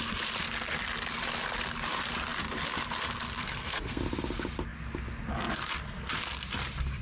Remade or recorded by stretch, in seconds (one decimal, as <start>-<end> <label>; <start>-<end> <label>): 0.0-3.4 recorded; 3.4-4.0 remade; 4.0-7.0 recorded